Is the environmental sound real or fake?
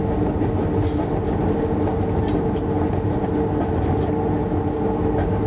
real